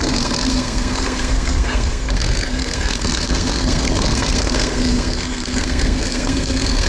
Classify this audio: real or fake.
fake